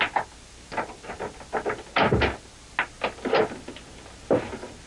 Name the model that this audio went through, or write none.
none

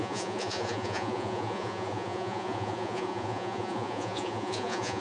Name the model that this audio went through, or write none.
vocoder, Vocos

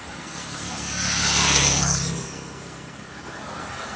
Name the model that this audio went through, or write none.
codec, SNAC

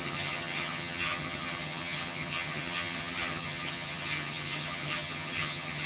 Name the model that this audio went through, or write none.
vocoder, HiFi-GAN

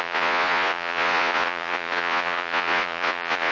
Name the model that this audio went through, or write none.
vocoder, Vocos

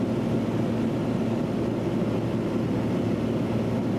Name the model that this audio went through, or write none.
none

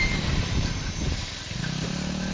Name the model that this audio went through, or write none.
vocoder, BigVGAN v2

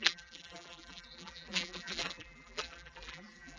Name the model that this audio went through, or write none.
vocoder, BigVGAN v2